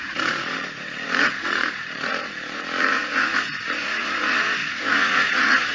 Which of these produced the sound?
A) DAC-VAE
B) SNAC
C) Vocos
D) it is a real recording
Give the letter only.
C